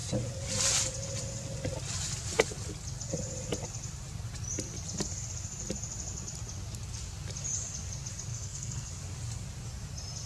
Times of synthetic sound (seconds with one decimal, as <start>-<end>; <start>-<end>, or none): 8.3-8.9